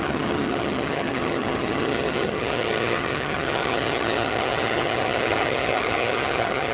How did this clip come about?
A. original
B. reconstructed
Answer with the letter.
B